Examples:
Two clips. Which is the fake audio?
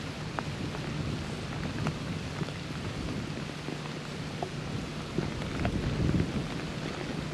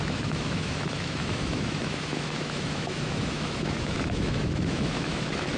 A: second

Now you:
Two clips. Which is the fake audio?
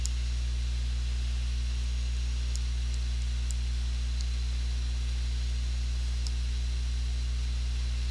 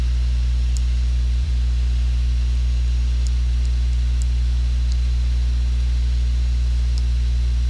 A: second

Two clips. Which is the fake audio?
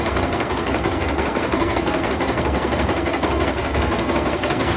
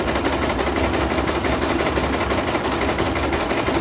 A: first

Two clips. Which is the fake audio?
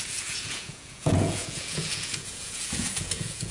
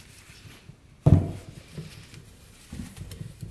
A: first